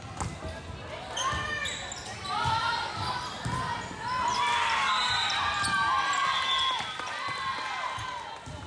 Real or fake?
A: real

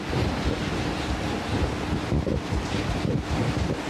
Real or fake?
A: real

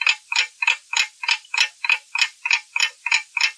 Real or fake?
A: real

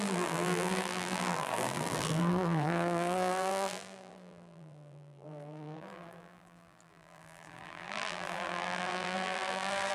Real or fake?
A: fake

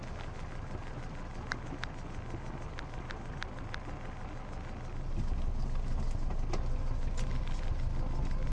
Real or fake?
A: real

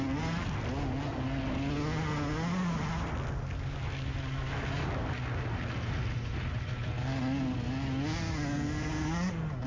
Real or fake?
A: real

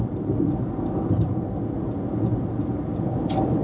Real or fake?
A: real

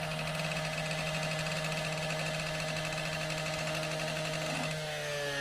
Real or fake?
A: real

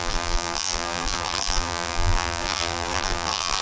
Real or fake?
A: fake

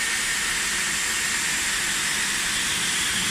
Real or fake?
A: real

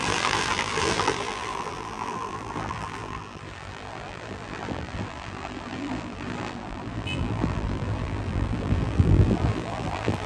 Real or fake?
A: fake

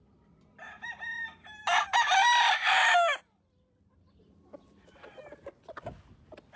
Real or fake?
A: real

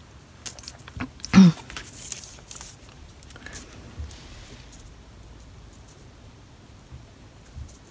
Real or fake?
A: real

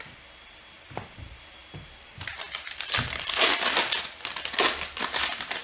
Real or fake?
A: fake